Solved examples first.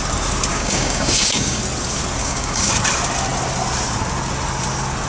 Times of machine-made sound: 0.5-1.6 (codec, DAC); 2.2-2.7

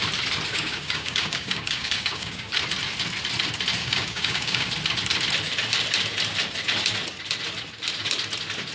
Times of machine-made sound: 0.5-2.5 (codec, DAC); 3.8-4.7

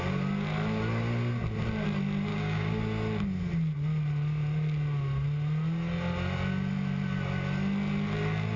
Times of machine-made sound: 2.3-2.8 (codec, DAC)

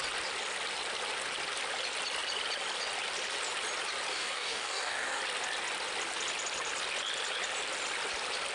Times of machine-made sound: 4.1-5.2 (codec, DAC)

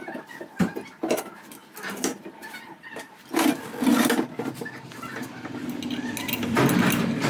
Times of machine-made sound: none

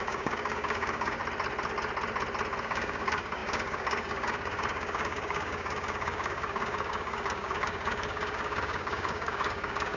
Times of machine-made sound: 0.0-1.2 (codec, DAC); 2.6-10.0

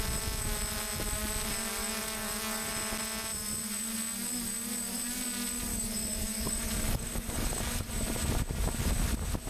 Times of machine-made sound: 1.8-2.7 (codec, DAC); 5.7-7.9